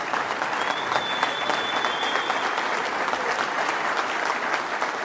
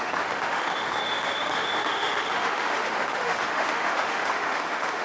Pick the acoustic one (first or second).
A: first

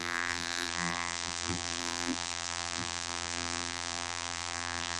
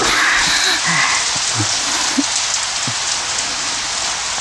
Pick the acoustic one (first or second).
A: second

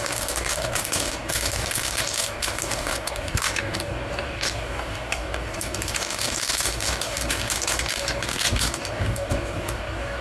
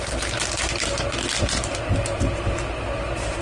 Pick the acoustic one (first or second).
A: second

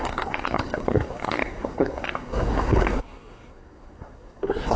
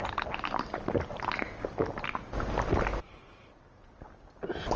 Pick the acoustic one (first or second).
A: second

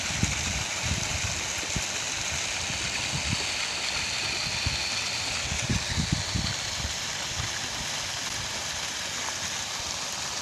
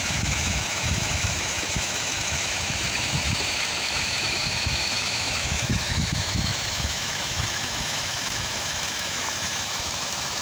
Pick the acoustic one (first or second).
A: first